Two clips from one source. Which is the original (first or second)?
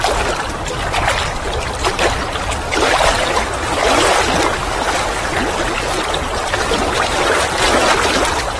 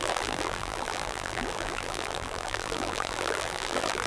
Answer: first